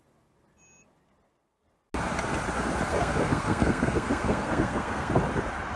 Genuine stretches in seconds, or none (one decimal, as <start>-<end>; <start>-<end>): 0.0-2.9; 5.1-5.8